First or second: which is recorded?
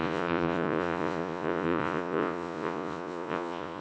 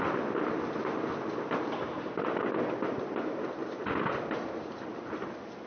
second